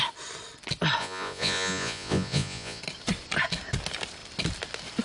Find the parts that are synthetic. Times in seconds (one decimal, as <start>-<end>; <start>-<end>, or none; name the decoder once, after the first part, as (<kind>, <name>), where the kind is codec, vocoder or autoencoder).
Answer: 1.0-2.8 (vocoder, Vocos)